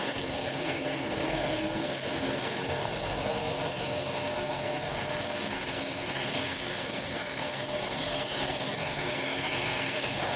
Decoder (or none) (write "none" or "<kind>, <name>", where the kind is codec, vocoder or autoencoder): codec, SNAC